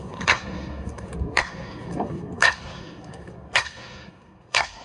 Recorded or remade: remade